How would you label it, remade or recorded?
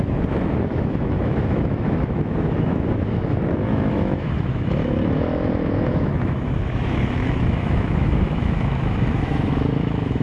remade